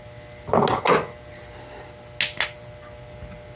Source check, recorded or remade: recorded